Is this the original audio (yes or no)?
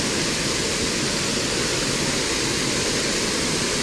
yes